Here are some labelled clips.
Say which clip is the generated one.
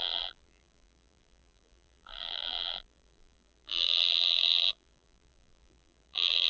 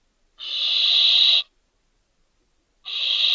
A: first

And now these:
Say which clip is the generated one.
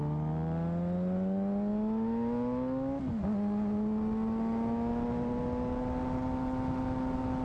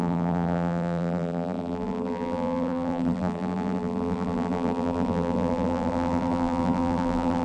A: second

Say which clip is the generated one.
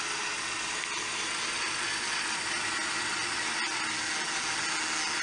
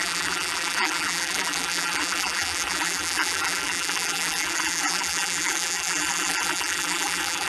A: second